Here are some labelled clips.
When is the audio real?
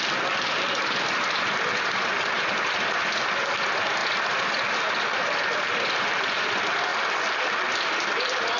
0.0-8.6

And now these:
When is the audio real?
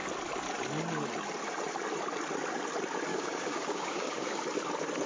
0.0-3.1; 4.4-5.1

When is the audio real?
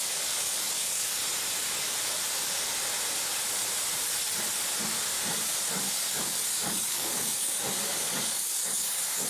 1.2-6.1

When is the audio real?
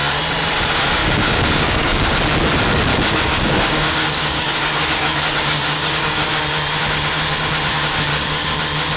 0.0-1.0; 2.1-2.9; 6.4-8.1; 8.6-9.0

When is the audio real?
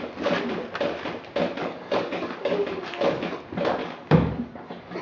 0.0-1.6; 3.4-3.8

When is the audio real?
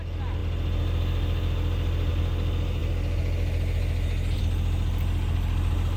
0.0-6.0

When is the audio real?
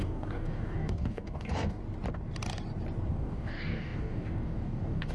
1.8-3.1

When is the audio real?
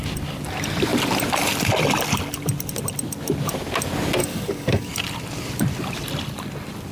0.0-4.2; 4.9-6.9